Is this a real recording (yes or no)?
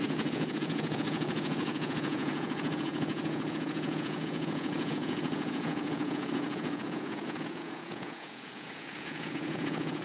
no